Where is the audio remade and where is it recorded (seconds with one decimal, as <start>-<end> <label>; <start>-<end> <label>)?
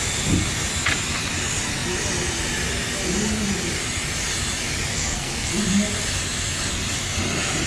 0.0-4.9 recorded; 4.9-5.6 remade; 5.6-7.7 recorded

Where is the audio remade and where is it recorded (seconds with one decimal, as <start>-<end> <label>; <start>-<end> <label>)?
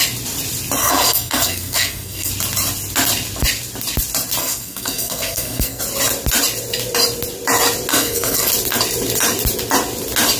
0.0-0.8 recorded; 0.8-2.3 remade; 2.3-4.4 recorded; 4.4-5.8 remade; 5.8-7.9 recorded; 7.9-8.5 remade; 8.5-10.4 recorded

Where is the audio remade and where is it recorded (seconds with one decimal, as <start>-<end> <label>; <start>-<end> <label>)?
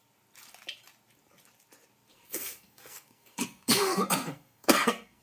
0.0-2.1 recorded; 2.1-5.2 remade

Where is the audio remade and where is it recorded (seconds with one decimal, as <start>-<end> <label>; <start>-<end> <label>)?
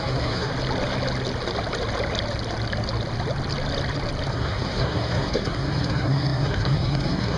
0.0-0.5 remade; 0.5-4.3 recorded; 4.3-7.4 remade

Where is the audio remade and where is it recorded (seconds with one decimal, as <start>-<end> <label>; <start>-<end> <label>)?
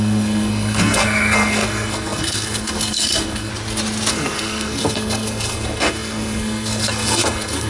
0.0-3.5 remade; 3.5-4.1 recorded; 4.1-7.7 remade